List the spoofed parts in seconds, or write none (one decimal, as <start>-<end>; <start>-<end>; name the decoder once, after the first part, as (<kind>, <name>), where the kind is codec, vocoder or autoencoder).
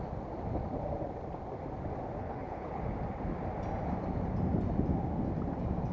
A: 2.2-2.8 (codec, HILCodec)